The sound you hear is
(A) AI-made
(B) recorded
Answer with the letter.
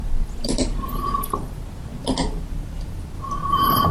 B